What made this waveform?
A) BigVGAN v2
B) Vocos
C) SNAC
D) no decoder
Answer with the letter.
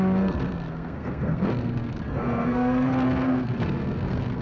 C